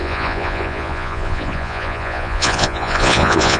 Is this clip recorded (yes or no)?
no